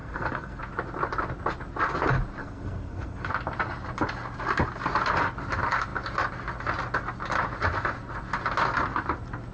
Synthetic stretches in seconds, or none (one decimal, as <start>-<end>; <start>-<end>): 0.0-0.6; 2.4-3.3